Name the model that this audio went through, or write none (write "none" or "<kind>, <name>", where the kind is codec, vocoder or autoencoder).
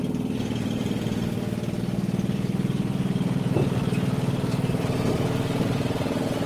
none